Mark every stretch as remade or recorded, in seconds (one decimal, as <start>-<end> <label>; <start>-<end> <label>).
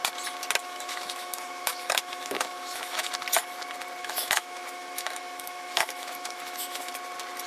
0.0-0.6 recorded; 0.6-3.1 remade; 3.1-4.0 recorded; 4.0-6.9 remade; 6.9-7.5 recorded